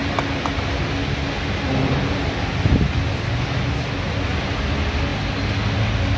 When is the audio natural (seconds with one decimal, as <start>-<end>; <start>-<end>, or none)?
0.0-6.2

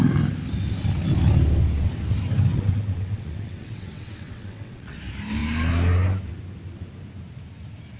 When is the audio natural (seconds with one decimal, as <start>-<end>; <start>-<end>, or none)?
0.0-2.5; 5.0-8.0